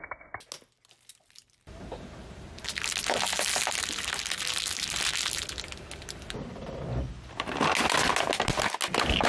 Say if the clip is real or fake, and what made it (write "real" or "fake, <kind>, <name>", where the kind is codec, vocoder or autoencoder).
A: real